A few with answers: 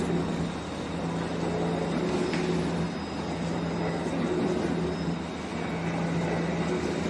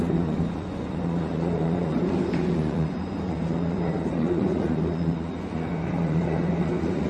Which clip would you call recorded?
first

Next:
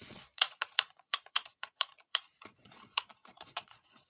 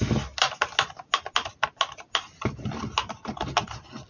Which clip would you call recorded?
second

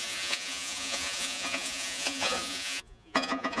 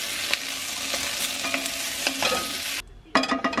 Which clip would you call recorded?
second